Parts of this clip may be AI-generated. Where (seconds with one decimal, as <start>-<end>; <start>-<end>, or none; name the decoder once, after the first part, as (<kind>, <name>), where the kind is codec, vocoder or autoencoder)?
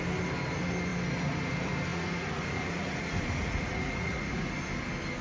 1.9-4.5 (vocoder, Vocos)